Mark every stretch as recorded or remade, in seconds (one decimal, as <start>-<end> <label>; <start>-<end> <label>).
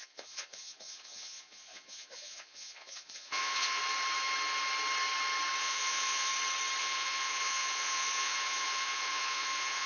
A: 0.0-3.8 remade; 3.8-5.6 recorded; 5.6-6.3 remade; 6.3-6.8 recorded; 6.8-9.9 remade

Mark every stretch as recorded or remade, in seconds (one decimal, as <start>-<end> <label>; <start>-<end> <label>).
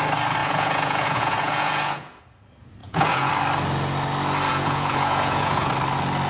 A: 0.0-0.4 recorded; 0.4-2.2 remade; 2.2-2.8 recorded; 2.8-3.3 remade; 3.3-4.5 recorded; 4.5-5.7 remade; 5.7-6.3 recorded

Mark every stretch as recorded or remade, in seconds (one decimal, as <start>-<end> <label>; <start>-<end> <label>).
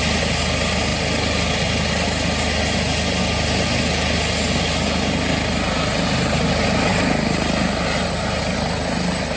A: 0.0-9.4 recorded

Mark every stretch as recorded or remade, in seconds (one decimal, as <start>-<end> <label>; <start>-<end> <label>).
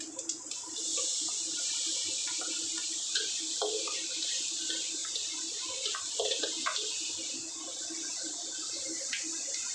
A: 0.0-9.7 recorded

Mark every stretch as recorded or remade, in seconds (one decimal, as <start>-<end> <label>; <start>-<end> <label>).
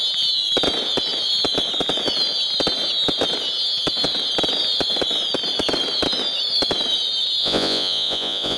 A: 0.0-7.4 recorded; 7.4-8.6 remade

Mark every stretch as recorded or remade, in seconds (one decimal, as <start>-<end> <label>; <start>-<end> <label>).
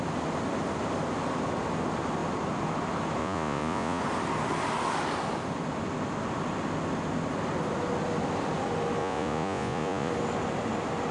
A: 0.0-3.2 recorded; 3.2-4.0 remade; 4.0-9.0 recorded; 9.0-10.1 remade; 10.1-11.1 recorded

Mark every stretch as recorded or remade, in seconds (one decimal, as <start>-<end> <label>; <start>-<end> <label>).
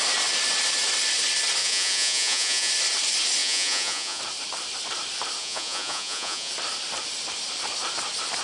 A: 0.0-1.6 recorded; 1.6-2.7 remade; 2.7-3.4 recorded; 3.4-4.2 remade; 4.2-5.4 recorded; 5.4-6.5 remade; 6.5-8.4 recorded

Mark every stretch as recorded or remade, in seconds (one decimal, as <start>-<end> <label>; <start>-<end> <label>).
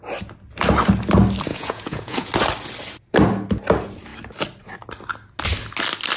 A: 0.0-1.5 recorded; 1.5-2.3 remade; 2.3-6.2 recorded